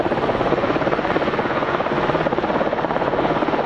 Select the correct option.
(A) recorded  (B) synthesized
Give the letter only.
B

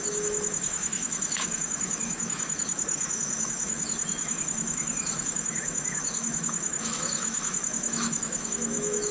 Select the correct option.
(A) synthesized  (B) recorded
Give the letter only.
A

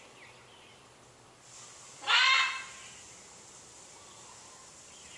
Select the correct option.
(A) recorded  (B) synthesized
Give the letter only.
A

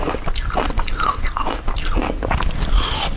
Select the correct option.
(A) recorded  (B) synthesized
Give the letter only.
A